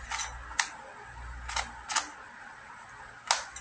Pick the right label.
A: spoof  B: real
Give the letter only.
B